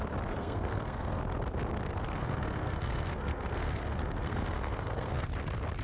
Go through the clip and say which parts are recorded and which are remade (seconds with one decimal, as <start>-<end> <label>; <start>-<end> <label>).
0.0-0.4 recorded; 0.4-1.2 remade; 1.2-2.2 recorded; 2.2-5.3 remade; 5.3-5.8 recorded